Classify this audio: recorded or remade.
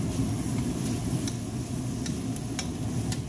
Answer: recorded